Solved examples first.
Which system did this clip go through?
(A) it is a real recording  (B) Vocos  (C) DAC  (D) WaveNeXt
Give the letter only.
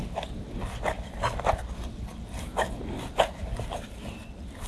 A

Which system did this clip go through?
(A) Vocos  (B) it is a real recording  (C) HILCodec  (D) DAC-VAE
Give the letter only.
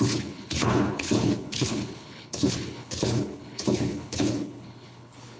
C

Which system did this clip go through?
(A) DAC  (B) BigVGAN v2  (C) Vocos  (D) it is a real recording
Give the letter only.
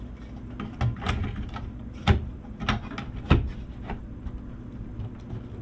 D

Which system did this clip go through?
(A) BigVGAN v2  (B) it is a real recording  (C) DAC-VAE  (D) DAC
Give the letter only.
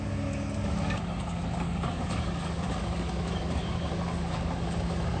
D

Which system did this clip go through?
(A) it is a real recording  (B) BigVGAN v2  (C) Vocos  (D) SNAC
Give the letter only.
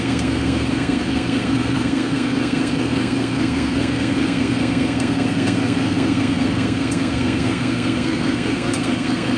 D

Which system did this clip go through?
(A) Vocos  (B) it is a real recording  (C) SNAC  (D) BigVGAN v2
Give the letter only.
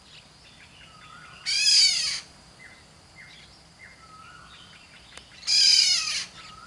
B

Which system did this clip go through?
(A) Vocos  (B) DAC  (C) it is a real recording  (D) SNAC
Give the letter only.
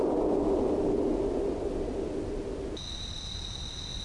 C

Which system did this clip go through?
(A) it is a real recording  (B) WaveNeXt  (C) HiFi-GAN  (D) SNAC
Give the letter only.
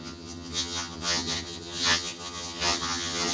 C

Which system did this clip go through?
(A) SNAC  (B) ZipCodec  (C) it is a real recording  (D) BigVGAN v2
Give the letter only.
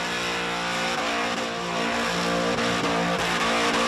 C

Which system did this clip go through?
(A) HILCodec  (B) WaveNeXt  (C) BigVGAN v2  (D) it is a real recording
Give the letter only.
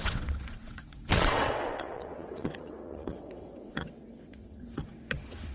B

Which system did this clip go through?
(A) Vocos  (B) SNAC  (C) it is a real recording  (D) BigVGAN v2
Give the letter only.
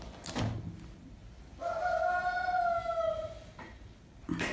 C